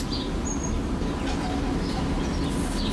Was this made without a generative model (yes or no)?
yes